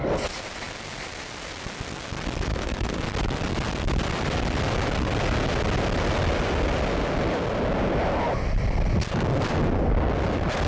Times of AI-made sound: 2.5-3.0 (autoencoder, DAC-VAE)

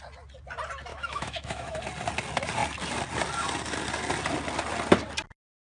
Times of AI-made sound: 0.9-1.8 (autoencoder, DAC-VAE)

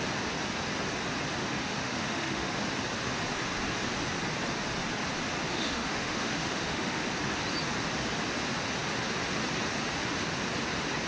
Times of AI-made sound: 1.4-2.5 (autoencoder, DAC-VAE); 5.5-7.0

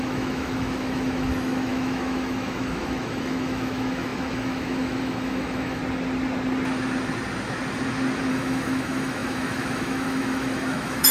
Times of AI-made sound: 0.0-5.8 (autoencoder, DAC-VAE); 8.3-11.1

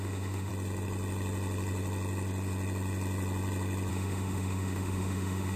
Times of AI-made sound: 0.0-0.5 (autoencoder, DAC-VAE); 3.9-5.6

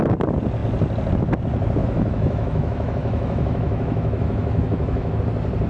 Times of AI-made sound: 1.8-5.2 (autoencoder, DAC-VAE)

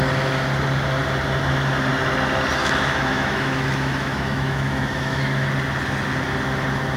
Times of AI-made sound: 2.6-5.5 (autoencoder, DAC-VAE)

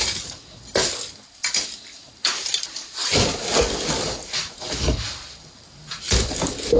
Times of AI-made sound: none